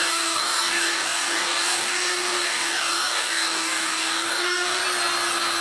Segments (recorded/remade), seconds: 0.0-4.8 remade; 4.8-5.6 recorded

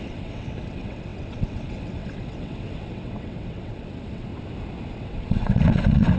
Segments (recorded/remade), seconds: 0.0-4.3 remade; 4.3-5.0 recorded; 5.0-6.2 remade

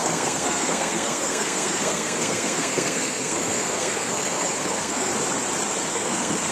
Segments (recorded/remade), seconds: 0.0-5.1 remade; 5.1-5.9 recorded; 5.9-6.5 remade

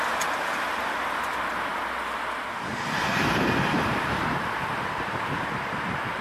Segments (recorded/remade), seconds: 0.0-3.1 recorded; 3.1-6.2 remade

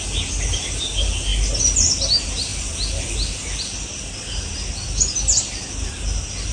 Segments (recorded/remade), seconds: 0.0-6.5 recorded